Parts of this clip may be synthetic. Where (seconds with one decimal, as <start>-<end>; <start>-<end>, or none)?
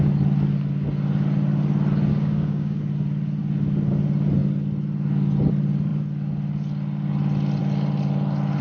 2.1-2.8